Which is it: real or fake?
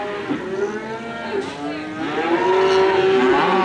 real